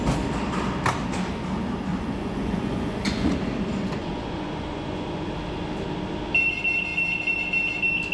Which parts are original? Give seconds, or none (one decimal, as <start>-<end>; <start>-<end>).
0.0-1.9; 3.3-4.0; 5.3-8.1